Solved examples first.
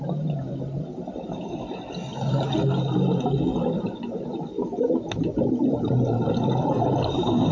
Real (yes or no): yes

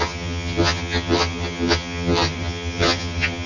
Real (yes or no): no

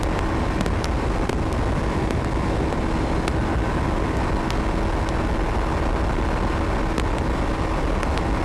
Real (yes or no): yes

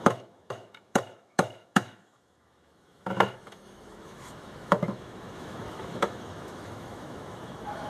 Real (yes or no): no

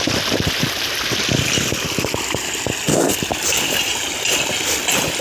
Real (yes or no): yes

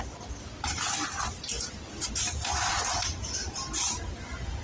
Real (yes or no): yes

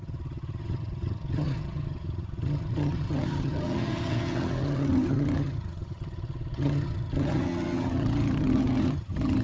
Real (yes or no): no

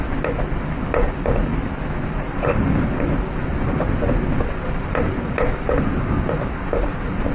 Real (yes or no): yes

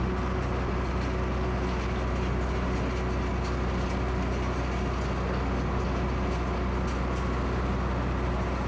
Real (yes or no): yes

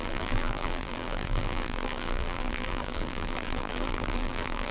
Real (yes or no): no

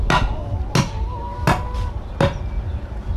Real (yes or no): yes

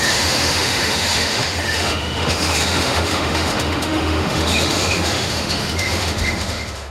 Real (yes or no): no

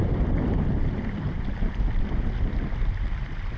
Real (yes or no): yes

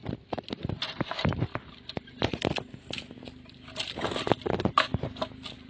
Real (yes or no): yes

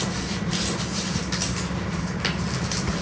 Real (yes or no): yes